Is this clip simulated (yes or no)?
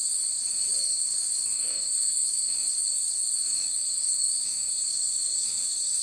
yes